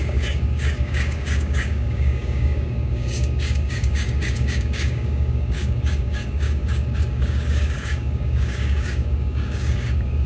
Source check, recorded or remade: remade